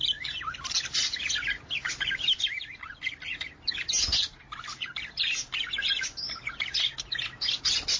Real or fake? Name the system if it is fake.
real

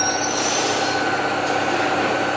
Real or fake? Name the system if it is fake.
real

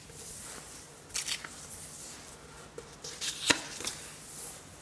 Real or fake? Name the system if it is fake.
real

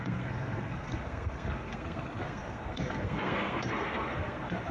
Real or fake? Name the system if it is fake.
fake, codec, SNAC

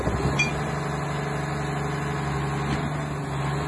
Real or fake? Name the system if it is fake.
real